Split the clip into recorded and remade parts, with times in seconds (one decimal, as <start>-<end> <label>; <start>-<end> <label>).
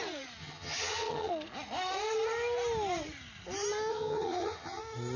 0.0-0.4 recorded; 0.4-1.3 remade; 1.3-3.9 recorded; 3.9-4.8 remade; 4.8-5.2 recorded